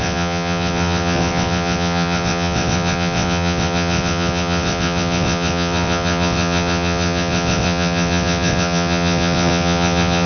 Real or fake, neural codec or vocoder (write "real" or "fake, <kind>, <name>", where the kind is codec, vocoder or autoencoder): fake, vocoder, WaveNeXt